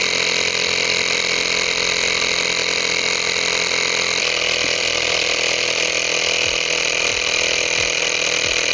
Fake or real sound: real